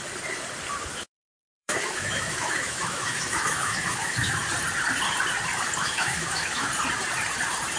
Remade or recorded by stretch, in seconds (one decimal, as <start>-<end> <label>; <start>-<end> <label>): 0.0-0.9 recorded; 0.9-4.4 remade; 4.4-5.8 recorded; 5.8-6.7 remade; 6.7-7.8 recorded